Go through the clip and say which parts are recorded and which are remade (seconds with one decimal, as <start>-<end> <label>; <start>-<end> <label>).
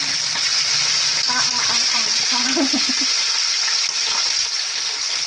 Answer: 0.0-5.3 recorded